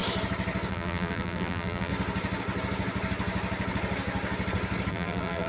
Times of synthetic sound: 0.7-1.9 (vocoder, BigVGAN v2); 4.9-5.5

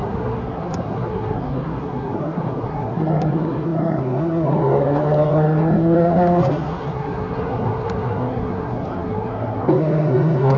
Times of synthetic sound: 0.0-10.6 (codec, SNAC)